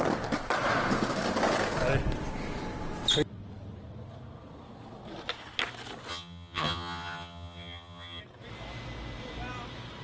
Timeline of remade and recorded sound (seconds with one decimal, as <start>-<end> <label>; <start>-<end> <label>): 0.0-6.1 recorded; 6.1-8.2 remade; 8.2-10.0 recorded